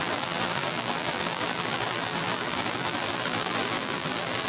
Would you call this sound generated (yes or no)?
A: yes